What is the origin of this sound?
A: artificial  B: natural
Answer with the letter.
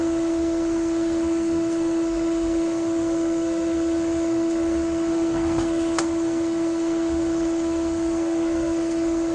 A